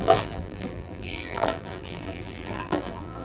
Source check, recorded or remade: remade